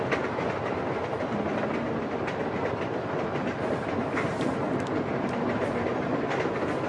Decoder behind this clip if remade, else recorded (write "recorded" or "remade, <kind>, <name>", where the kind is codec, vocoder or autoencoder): recorded